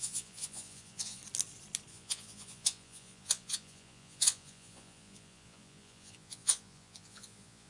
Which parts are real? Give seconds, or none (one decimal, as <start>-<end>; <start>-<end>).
1.2-1.9